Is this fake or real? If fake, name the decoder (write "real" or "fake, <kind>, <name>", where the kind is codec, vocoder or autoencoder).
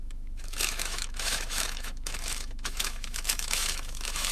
fake, autoencoder, DAC-VAE